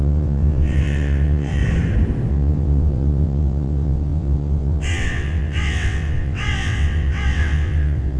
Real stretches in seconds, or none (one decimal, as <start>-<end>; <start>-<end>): 1.6-2.3